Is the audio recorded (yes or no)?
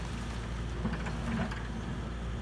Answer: yes